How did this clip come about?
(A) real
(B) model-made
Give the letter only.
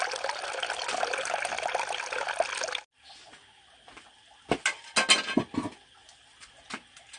A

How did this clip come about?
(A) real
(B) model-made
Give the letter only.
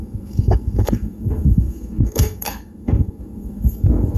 B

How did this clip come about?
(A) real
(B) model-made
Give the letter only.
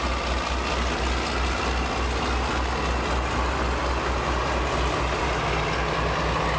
A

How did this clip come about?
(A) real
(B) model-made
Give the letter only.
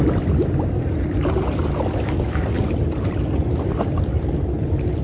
A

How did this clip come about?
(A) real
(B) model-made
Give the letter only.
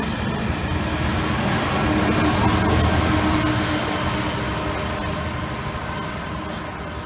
A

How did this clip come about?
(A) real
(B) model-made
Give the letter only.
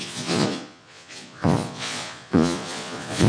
B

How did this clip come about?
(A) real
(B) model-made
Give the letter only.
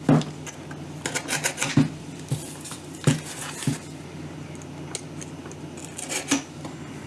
A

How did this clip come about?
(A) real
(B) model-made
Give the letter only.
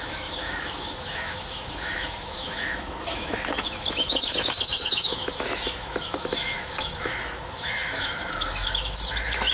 B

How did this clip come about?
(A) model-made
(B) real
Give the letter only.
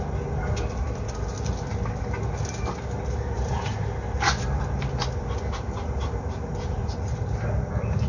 B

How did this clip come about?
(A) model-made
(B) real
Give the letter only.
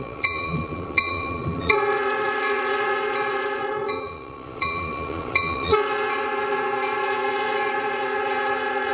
A